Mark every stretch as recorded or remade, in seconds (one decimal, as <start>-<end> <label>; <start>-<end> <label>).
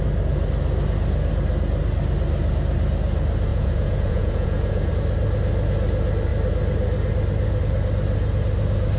0.0-3.5 recorded; 3.5-4.9 remade; 4.9-9.0 recorded